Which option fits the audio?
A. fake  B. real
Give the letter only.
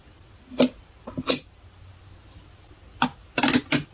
B